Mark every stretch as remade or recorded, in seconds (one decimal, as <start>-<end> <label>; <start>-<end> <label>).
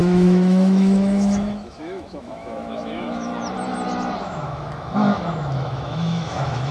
0.0-3.3 remade; 3.3-4.2 recorded; 4.2-6.7 remade